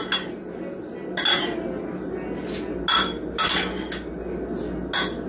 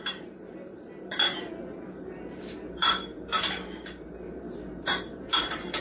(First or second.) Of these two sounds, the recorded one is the first